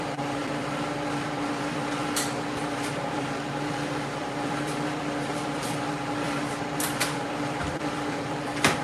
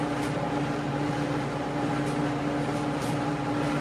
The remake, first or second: first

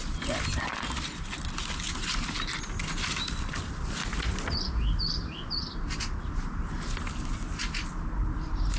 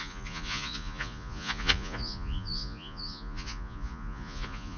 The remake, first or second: second